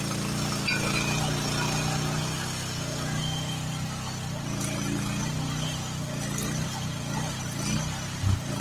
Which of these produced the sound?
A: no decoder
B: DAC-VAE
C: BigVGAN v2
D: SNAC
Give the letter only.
A